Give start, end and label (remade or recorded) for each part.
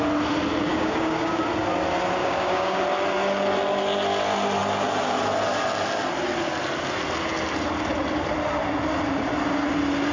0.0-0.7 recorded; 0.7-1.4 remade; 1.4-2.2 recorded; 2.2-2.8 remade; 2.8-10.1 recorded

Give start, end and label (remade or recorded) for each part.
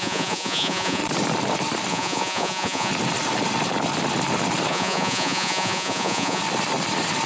0.0-1.0 remade; 1.0-1.9 recorded; 1.9-2.9 remade; 2.9-4.7 recorded; 4.7-6.4 remade; 6.4-7.3 recorded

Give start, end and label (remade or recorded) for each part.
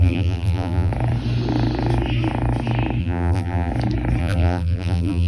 0.0-0.9 remade; 0.9-3.0 recorded; 3.0-3.7 remade; 3.7-4.2 recorded; 4.2-5.3 remade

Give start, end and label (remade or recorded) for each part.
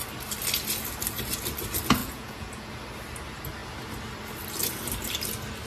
0.0-2.0 recorded; 2.0-2.7 remade; 2.7-5.7 recorded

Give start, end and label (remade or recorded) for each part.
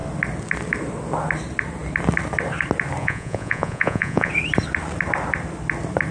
0.0-3.0 recorded; 3.0-4.3 remade; 4.3-6.1 recorded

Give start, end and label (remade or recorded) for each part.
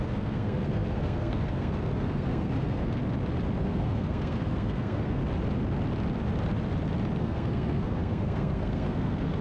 0.0-3.0 remade; 3.0-3.6 recorded; 3.6-5.2 remade; 5.2-7.2 recorded; 7.2-9.4 remade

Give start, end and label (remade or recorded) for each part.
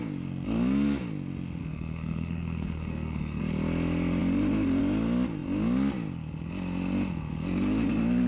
0.0-1.6 recorded; 1.6-3.4 remade; 3.4-8.3 recorded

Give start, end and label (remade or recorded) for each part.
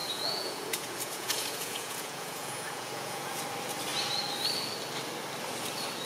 0.0-3.4 remade; 3.4-6.1 recorded